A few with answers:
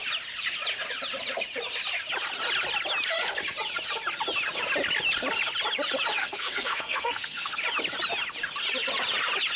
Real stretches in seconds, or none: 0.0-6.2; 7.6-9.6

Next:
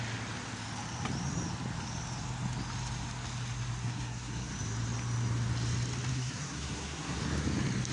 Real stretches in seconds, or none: 0.0-3.8; 4.5-6.1; 7.2-7.9

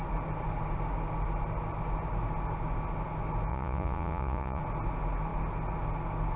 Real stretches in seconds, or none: 0.0-3.5; 4.6-6.4